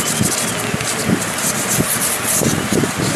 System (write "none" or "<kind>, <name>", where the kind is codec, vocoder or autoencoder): none